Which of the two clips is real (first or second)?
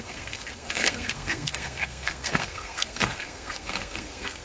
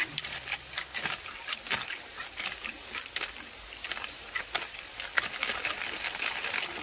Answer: second